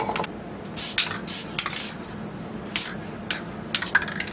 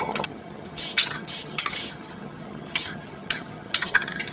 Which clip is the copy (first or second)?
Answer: second